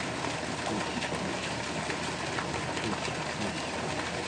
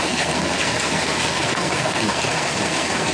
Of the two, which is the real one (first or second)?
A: first